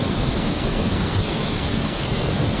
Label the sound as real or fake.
fake